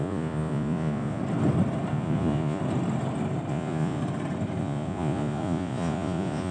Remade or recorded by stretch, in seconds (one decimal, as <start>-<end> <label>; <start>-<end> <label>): 0.0-1.2 remade; 1.2-1.9 recorded; 1.9-2.6 remade; 2.6-3.5 recorded; 3.5-4.0 remade; 4.0-4.6 recorded; 4.6-6.5 remade